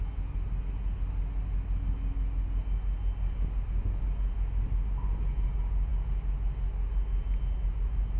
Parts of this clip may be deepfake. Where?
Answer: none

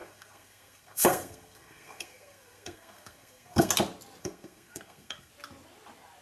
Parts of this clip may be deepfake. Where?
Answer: 0.0-3.7 (codec, SNAC); 4.2-5.3

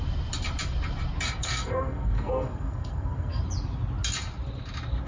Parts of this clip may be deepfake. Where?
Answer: 1.4-3.4 (codec, SNAC)

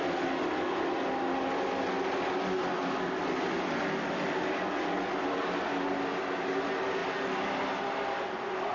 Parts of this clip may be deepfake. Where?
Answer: none

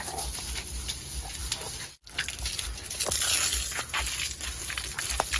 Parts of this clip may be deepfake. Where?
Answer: none

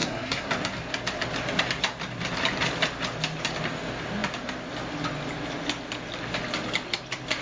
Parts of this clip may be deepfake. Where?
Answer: 0.0-0.5 (codec, SNAC)